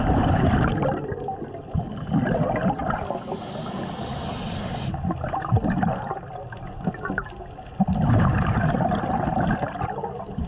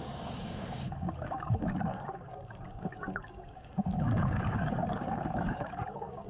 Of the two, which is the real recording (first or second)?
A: first